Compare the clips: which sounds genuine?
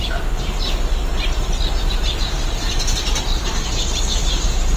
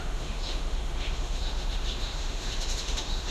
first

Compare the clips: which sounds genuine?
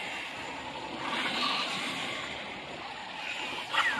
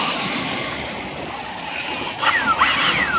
first